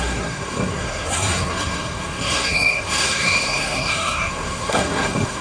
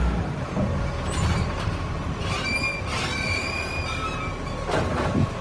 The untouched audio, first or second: second